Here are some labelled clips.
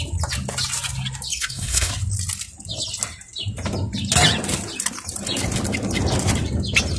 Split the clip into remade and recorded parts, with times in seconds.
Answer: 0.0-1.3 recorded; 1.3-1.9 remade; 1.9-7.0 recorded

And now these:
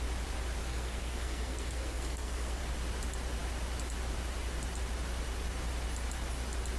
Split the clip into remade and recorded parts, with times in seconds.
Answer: 0.0-0.6 recorded; 0.6-2.6 remade; 2.6-6.8 recorded

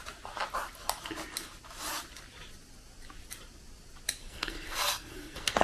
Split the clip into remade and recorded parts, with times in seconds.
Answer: 0.0-4.2 recorded; 4.2-5.6 remade

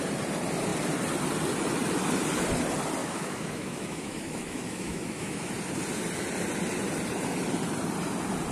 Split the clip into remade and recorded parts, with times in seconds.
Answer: 0.0-3.0 recorded; 3.0-5.5 remade; 5.5-8.5 recorded

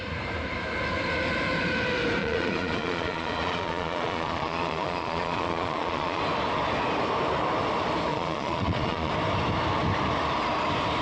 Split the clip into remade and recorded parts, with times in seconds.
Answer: 0.0-2.2 recorded; 2.2-6.2 remade; 6.2-8.1 recorded; 8.1-9.1 remade; 9.1-11.0 recorded